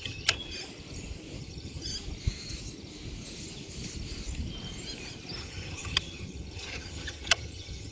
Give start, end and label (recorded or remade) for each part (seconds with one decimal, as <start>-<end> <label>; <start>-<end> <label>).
0.0-0.4 remade; 0.4-1.4 recorded; 1.4-1.9 remade; 1.9-5.4 recorded; 5.4-7.9 remade